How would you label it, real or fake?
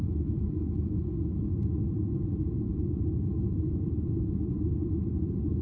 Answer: real